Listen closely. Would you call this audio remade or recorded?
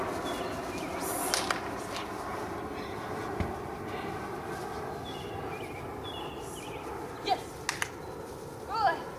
recorded